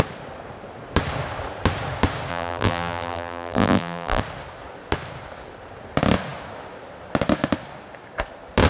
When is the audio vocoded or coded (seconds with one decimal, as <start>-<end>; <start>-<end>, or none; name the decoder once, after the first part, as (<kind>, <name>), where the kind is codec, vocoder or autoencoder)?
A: 2.3-4.2 (vocoder, BigVGAN v2)